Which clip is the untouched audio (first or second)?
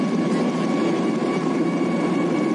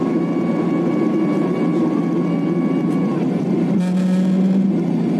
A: second